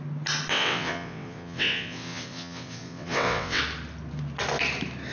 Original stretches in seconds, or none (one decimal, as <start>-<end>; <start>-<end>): 0.0-0.5; 3.6-5.1